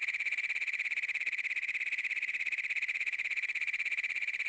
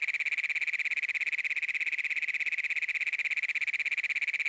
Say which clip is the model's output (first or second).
first